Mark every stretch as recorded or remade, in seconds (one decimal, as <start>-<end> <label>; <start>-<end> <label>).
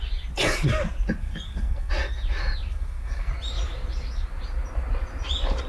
0.0-1.2 recorded; 1.2-1.9 remade; 1.9-2.7 recorded; 2.7-3.3 remade; 3.3-5.7 recorded